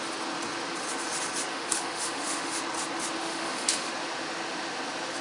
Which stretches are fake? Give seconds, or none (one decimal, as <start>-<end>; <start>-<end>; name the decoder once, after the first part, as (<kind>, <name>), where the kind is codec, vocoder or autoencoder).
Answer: 1.5-2.6 (autoencoder, DAC-VAE); 3.2-3.9